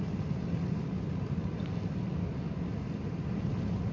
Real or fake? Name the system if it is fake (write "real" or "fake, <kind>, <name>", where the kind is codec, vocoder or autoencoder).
real